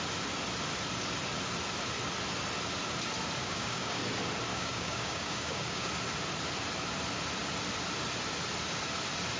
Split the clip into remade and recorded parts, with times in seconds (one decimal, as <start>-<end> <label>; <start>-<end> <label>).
0.0-3.4 recorded; 3.4-4.0 remade; 4.0-4.5 recorded; 4.5-5.9 remade; 5.9-9.4 recorded